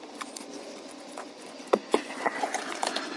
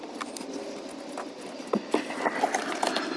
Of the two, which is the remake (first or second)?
first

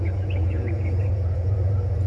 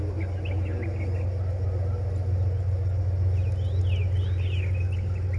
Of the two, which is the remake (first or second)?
first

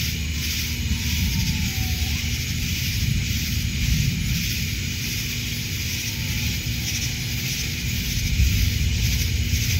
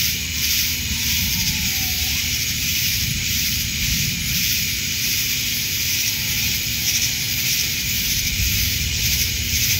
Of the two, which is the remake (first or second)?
second